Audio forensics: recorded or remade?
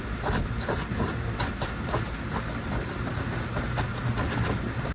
recorded